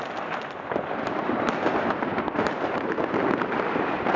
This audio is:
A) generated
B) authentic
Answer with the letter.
B